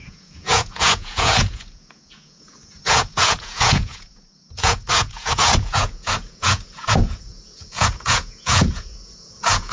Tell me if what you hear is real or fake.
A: fake